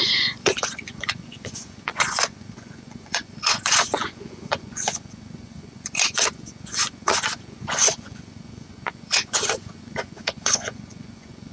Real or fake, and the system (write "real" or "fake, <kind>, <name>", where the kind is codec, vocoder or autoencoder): fake, vocoder, Vocos